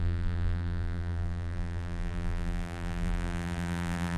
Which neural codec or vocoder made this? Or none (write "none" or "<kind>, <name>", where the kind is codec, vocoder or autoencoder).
vocoder, BigVGAN v2